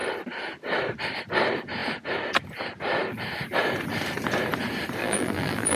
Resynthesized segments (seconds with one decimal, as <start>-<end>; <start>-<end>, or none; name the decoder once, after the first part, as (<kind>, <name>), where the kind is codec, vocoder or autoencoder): 5.0-5.8 (vocoder, BigVGAN v2)